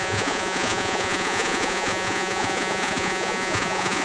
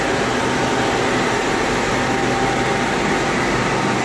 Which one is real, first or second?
second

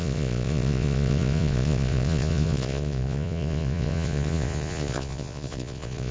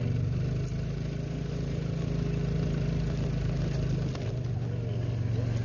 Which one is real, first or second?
second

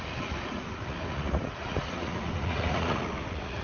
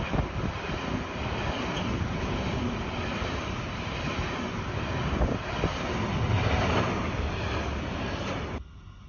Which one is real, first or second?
second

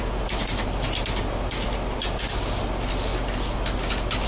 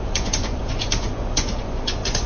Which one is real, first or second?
first